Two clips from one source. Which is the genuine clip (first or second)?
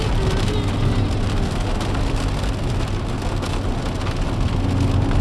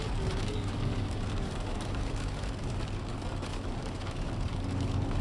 first